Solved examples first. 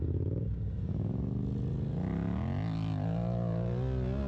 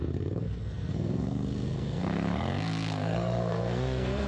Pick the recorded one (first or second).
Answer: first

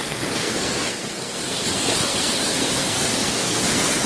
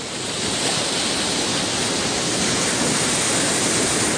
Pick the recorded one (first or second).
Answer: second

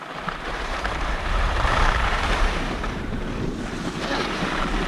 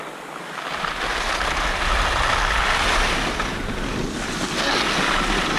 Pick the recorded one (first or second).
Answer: second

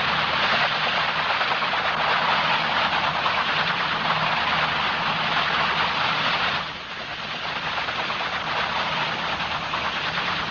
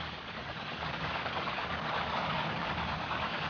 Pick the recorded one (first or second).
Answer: first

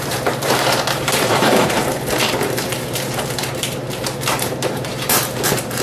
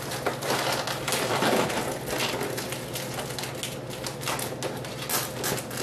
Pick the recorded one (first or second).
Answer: second